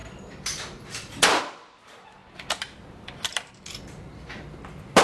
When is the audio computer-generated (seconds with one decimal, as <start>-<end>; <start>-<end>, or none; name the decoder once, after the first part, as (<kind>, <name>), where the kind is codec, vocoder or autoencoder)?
none